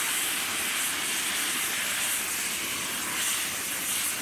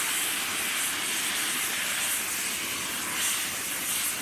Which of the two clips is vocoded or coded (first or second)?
first